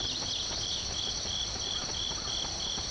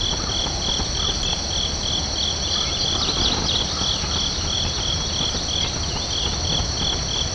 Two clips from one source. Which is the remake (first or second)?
first